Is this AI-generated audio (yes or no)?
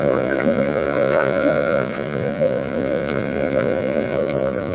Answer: yes